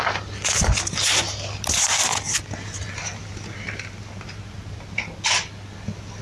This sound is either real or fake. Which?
real